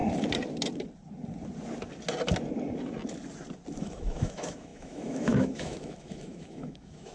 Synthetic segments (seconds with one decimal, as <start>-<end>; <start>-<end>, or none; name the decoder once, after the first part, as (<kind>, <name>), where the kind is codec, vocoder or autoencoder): 3.8-7.1 (autoencoder, DAC-VAE)